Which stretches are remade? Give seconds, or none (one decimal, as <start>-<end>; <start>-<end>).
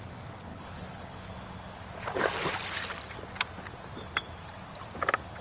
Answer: 0.5-1.3